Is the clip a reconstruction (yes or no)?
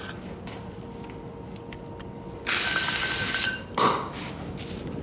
no